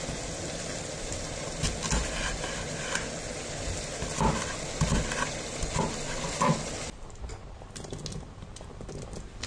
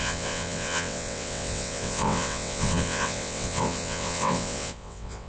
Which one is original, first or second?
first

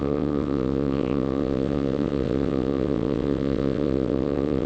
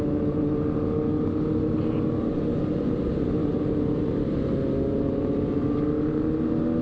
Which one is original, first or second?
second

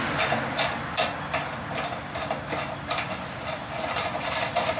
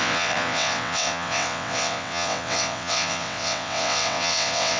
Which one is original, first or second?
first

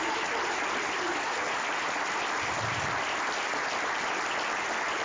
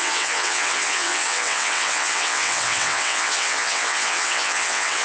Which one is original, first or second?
first